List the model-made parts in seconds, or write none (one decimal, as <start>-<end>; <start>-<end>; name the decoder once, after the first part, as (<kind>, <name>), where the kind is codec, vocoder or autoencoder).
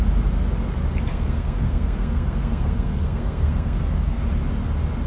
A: 1.1-4.2 (codec, SNAC)